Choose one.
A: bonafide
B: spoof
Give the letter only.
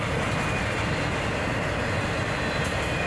A